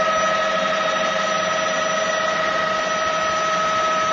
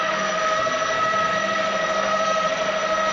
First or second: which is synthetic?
second